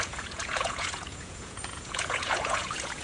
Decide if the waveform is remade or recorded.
remade